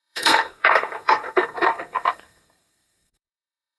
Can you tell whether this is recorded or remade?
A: remade